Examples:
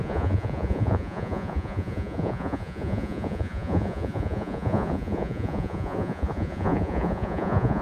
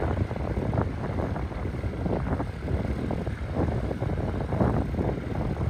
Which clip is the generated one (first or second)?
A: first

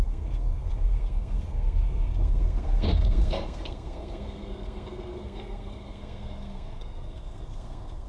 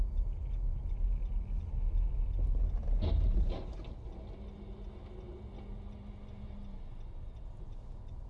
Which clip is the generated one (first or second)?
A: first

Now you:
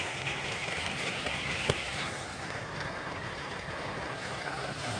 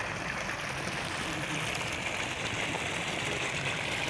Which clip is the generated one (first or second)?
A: first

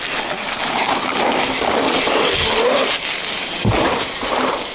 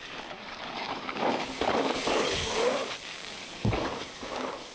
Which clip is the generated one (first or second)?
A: second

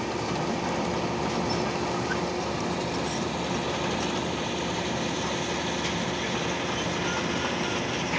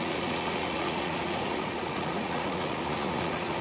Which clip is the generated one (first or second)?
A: second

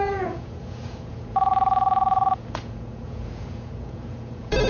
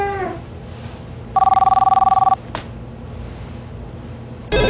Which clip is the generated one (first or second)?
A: first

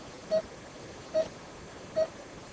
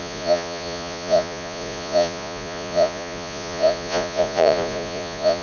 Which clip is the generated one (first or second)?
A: second